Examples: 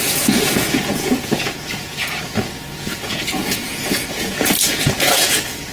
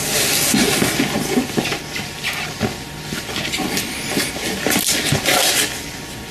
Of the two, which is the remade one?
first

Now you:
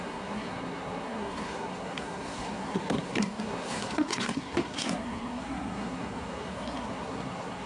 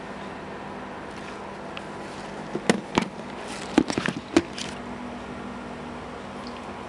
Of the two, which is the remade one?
first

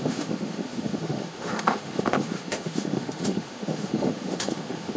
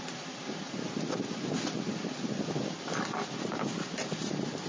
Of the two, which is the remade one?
first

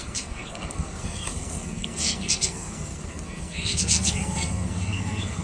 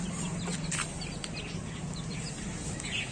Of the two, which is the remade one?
first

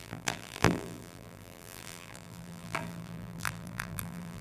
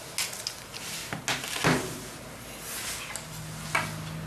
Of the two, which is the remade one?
first